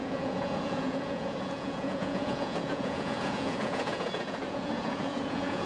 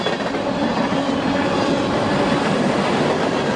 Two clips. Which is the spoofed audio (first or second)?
first